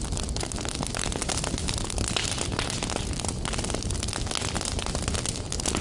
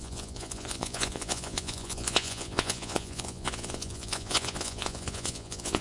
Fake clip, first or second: second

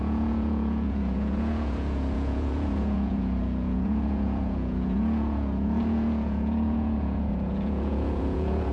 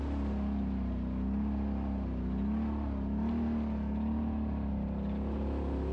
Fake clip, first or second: first